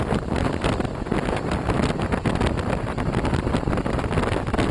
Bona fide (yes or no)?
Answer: yes